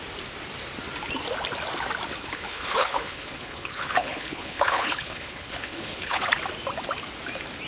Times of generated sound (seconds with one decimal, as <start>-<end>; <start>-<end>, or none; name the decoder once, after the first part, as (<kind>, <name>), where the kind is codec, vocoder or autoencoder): 2.2-6.3 (codec, HILCodec)